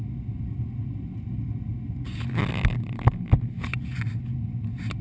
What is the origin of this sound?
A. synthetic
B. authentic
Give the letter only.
B